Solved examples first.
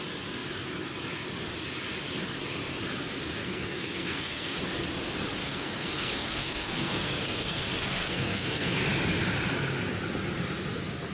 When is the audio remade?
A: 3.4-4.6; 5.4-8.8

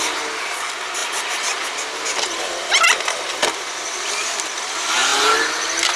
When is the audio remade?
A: none

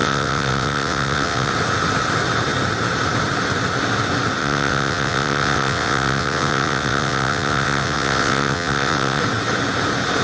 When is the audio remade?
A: 0.0-1.5; 4.4-9.2

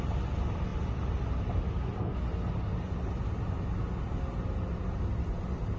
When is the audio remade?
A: none